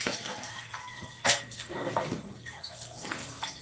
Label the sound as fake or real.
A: fake